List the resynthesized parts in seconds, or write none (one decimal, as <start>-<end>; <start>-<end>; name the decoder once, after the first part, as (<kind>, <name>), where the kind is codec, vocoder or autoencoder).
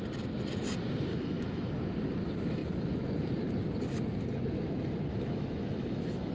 1.1-1.7 (autoencoder, DAC-VAE); 5.1-6.3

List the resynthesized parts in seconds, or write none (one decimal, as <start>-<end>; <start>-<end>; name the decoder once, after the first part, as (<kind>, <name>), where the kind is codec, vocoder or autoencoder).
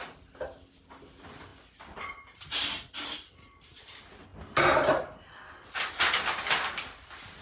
none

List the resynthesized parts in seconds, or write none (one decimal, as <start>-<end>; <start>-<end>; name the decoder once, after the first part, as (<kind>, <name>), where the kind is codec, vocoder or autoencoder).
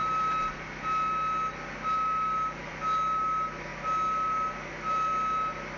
none